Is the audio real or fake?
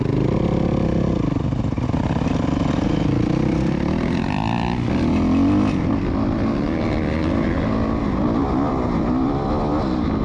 real